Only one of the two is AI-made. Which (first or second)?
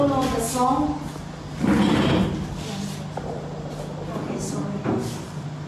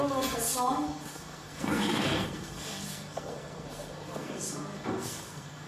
second